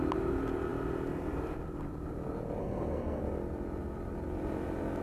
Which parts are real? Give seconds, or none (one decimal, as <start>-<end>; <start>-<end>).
0.0-2.6; 3.2-5.0